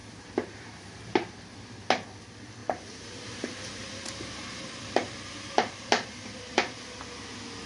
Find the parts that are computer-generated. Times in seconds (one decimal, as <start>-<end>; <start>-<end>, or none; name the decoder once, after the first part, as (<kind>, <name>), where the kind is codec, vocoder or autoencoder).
0.0-1.0 (vocoder, BigVGAN v2); 2.6-7.0